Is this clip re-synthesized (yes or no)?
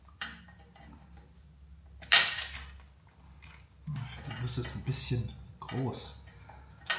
no